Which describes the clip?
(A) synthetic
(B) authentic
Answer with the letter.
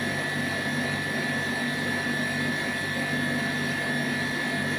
B